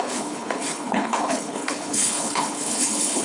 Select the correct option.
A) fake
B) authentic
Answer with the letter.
A